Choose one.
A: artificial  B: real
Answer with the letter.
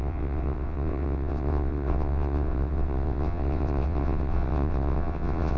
A